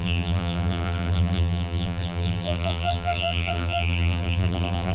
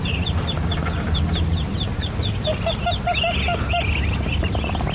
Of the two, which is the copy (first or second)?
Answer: first